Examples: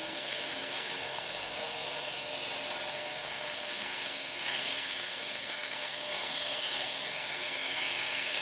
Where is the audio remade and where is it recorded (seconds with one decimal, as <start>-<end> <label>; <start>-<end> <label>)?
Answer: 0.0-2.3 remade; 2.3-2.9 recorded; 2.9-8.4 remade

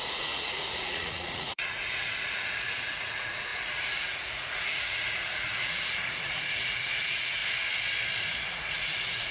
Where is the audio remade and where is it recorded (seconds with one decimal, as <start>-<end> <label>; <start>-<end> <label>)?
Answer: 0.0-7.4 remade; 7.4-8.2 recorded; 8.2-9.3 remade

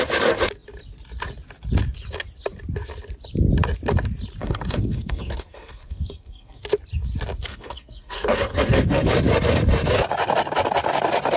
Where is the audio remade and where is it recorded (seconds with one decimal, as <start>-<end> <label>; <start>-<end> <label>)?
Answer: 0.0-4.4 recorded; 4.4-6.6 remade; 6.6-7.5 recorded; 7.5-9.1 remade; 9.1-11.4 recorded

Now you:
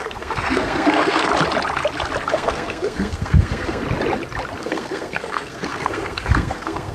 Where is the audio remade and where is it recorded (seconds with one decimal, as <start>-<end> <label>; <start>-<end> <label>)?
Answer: 0.0-1.3 remade; 1.3-2.3 recorded; 2.3-3.8 remade; 3.8-4.6 recorded; 4.6-6.9 remade

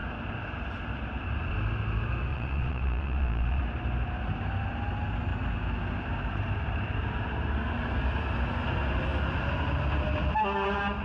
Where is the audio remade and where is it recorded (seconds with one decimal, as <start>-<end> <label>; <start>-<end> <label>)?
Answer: 0.0-2.3 recorded; 2.3-3.6 remade; 3.6-11.0 recorded

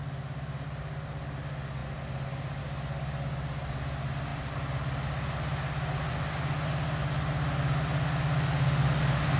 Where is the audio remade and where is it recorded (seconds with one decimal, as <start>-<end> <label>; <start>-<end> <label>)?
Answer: 0.0-9.4 recorded

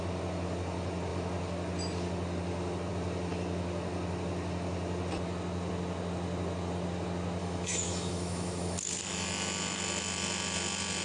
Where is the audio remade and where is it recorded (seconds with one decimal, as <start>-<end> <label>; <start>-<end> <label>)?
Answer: 0.0-7.4 recorded; 7.4-8.9 remade; 8.9-11.0 recorded